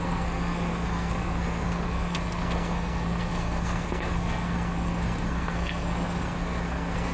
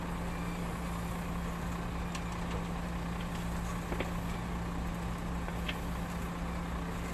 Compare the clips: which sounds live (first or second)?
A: second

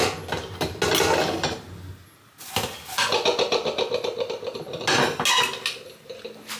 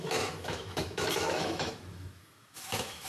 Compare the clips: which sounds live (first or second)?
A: first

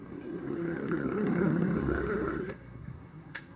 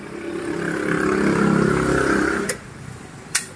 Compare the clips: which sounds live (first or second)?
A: second